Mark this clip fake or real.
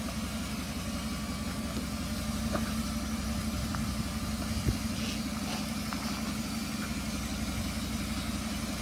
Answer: real